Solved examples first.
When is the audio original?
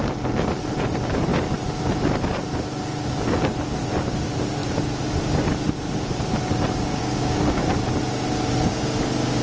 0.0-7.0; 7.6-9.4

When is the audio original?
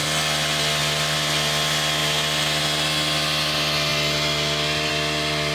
0.0-5.5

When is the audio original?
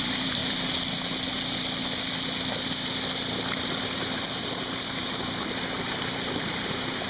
0.4-3.8